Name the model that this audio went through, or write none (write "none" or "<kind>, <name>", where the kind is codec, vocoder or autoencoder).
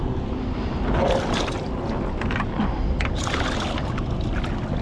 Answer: none